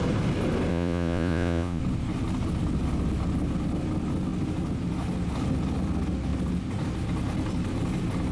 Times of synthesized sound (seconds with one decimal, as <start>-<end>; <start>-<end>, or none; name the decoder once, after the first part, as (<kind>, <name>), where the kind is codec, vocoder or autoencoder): 0.7-1.8 (vocoder, Vocos)